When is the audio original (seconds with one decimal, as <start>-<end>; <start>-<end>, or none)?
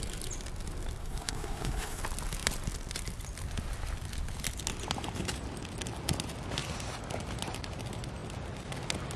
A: 0.0-1.0; 2.0-9.2